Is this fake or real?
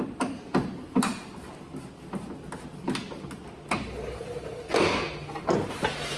real